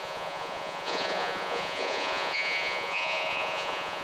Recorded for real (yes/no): no